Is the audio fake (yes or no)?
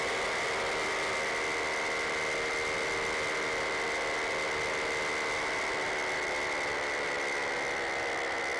no